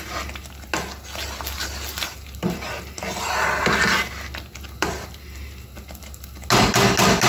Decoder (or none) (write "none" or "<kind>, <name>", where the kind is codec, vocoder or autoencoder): none